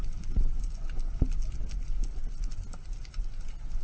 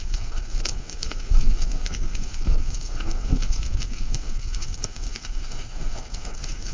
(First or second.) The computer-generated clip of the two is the second